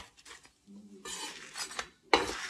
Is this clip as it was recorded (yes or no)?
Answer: yes